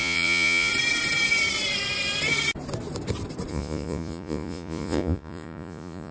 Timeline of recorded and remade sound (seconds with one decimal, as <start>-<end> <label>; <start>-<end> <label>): 0.0-0.7 remade; 0.7-3.5 recorded; 3.5-6.1 remade